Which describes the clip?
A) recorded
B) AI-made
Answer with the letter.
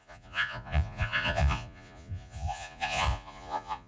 B